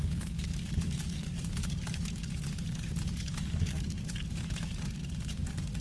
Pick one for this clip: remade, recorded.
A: remade